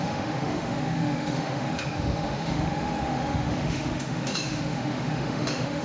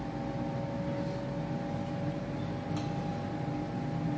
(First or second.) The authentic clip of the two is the second